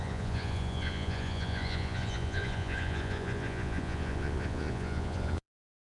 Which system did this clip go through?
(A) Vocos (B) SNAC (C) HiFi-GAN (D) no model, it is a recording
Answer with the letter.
A